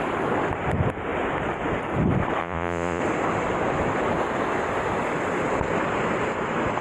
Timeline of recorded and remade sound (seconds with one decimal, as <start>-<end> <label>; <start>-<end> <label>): 0.0-2.4 recorded; 2.4-3.0 remade; 3.0-6.8 recorded